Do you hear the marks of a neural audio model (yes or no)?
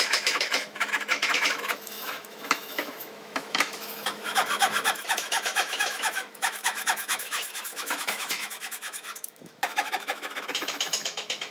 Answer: yes